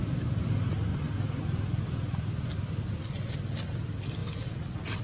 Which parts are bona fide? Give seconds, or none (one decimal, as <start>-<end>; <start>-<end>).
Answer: 0.0-5.0